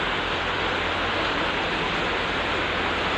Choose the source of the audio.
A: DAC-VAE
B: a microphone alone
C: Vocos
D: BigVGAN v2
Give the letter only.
B